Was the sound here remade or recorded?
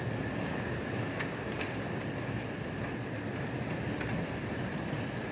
recorded